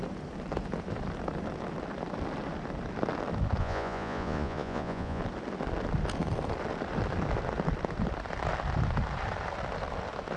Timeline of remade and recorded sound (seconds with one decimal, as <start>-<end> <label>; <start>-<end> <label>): 0.0-3.6 recorded; 3.6-5.2 remade; 5.2-10.4 recorded

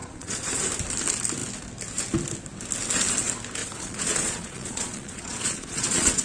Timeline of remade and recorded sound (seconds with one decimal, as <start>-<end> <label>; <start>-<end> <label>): 0.0-0.6 remade; 0.6-3.6 recorded; 3.6-6.2 remade

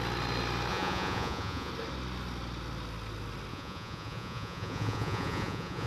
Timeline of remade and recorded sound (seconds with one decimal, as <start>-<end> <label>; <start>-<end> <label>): 0.0-0.7 recorded; 0.7-1.7 remade; 1.7-3.5 recorded; 3.5-5.9 remade

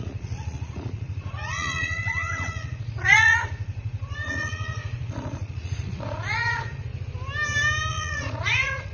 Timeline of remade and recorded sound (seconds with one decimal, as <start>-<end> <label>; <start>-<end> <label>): 0.0-6.9 remade; 6.9-7.9 recorded; 7.9-8.9 remade

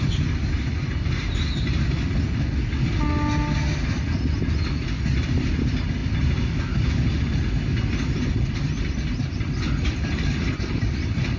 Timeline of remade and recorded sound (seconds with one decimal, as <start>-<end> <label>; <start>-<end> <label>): 0.0-11.4 recorded

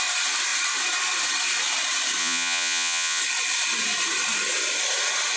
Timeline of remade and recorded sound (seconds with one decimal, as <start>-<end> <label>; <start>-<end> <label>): 0.0-2.2 recorded; 2.2-3.2 remade; 3.2-5.4 recorded